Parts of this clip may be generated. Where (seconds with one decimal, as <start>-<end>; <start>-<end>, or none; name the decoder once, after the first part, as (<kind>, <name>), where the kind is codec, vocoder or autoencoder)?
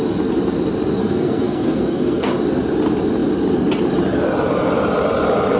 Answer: 1.0-2.3 (codec, SNAC)